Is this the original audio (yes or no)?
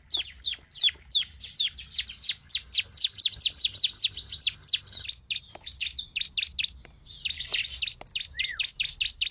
yes